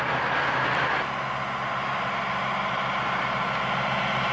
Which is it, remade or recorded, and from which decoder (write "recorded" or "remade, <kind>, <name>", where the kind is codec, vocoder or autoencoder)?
recorded